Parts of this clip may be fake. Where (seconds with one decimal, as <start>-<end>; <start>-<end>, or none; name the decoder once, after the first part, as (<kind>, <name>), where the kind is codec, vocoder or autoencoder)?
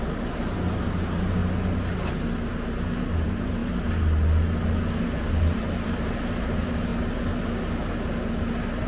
0.0-1.4 (vocoder, BigVGAN v2); 2.5-3.6; 4.9-6.9